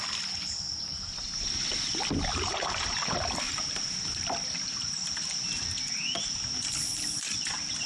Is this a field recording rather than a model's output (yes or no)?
no